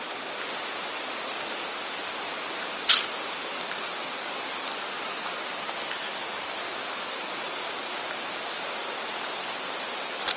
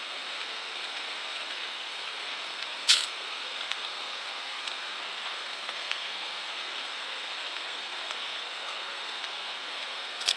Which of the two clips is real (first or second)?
first